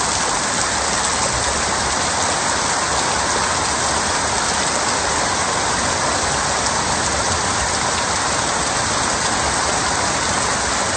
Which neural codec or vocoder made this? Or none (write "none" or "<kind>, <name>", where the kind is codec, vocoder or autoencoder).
none